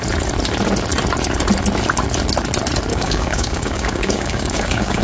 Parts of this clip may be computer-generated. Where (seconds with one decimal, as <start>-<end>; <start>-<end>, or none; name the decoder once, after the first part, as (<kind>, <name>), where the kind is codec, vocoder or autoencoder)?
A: 2.9-5.0 (codec, DAC)